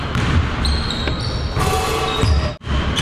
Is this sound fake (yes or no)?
no